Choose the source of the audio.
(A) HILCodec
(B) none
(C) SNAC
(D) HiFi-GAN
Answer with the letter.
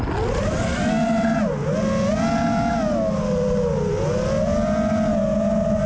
B